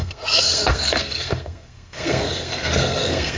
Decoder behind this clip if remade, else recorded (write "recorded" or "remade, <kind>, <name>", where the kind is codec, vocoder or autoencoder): remade, codec, SNAC